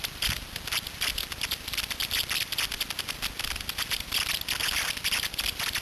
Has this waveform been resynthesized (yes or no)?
no